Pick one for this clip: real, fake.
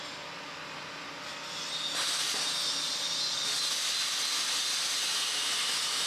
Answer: real